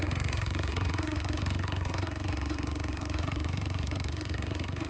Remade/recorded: remade